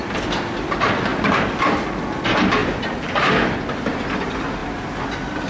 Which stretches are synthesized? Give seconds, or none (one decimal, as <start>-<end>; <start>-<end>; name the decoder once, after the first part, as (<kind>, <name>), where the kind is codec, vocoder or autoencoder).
1.1-2.0 (vocoder, BigVGAN v2); 2.6-3.9; 4.6-5.5